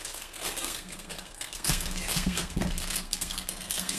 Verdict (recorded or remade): remade